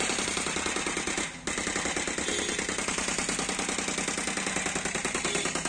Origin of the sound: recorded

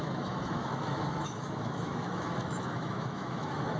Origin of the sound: remade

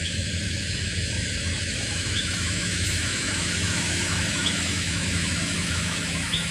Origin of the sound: remade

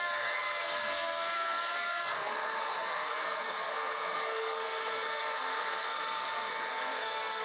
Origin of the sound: remade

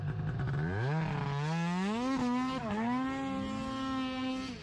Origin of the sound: recorded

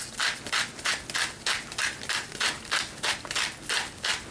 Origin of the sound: recorded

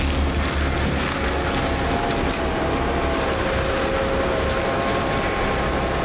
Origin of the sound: recorded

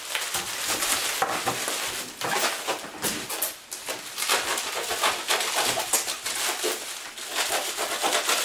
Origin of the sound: remade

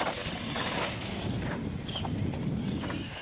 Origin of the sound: recorded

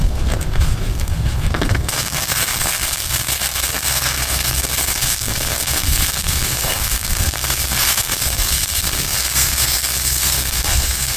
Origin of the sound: remade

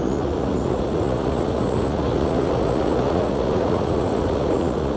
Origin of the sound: remade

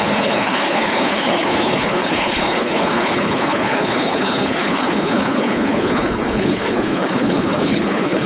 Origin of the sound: remade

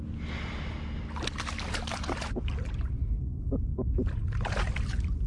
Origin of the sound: recorded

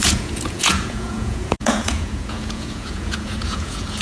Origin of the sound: remade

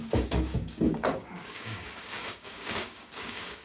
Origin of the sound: remade